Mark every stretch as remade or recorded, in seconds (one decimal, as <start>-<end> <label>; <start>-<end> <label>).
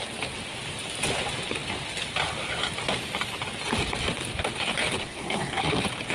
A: 0.0-5.0 recorded; 5.0-5.6 remade; 5.6-6.1 recorded